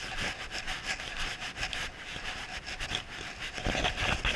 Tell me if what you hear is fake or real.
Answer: real